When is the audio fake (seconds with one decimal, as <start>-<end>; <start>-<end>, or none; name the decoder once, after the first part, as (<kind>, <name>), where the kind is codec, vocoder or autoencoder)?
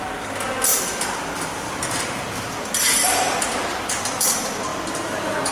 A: 0.7-4.0 (vocoder, BigVGAN v2); 4.7-5.5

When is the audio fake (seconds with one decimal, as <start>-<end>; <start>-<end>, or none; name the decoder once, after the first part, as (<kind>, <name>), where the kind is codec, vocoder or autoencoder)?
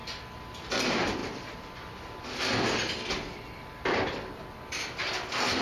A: 1.2-4.4 (vocoder, BigVGAN v2)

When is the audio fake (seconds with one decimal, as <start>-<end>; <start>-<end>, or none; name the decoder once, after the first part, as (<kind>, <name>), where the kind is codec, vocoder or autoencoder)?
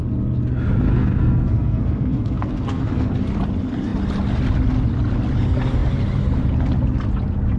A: 0.9-3.1 (codec, SNAC)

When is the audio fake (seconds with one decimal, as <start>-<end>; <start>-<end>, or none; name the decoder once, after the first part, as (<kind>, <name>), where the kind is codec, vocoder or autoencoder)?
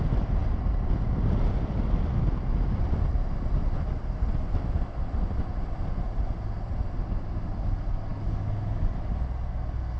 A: 8.1-8.8 (codec, DAC)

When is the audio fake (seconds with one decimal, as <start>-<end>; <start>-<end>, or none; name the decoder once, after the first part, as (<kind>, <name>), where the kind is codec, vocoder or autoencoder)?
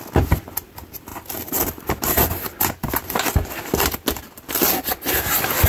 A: none